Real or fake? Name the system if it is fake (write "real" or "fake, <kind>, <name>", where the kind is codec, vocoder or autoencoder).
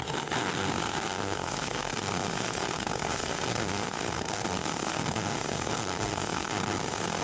fake, codec, SNAC